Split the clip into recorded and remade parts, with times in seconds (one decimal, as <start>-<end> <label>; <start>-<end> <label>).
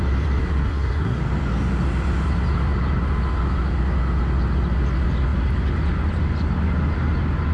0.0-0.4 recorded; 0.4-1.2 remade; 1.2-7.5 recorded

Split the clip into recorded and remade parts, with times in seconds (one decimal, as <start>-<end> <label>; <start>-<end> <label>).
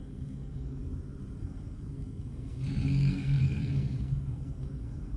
0.0-0.8 remade; 0.8-1.4 recorded; 1.4-5.2 remade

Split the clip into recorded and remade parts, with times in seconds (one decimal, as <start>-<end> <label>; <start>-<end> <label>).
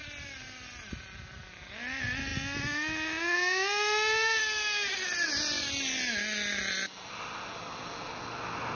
0.0-8.7 recorded